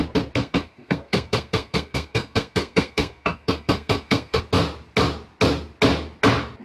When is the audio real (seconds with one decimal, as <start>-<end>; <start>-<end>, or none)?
0.0-0.4; 4.4-6.6